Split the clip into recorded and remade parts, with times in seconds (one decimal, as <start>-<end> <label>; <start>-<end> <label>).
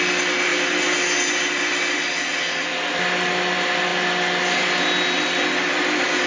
0.0-6.3 recorded